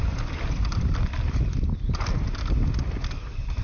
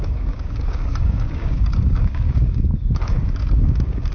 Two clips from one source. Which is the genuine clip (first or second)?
first